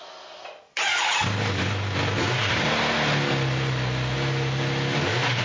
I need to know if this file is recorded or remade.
recorded